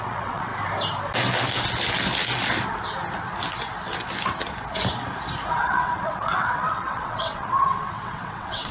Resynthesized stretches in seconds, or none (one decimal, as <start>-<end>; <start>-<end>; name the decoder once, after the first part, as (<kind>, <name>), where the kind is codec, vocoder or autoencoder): 0.0-0.5 (vocoder, WaveNeXt); 5.6-8.7